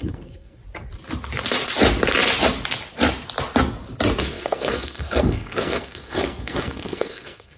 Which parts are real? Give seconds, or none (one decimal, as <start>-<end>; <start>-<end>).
0.6-4.2